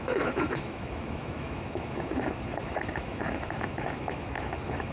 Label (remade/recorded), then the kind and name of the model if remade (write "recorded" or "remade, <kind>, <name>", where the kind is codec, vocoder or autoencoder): remade, autoencoder, DAC-VAE